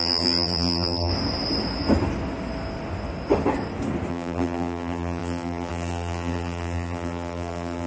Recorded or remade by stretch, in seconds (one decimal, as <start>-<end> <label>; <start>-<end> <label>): 0.0-1.1 remade; 1.1-4.1 recorded; 4.1-7.9 remade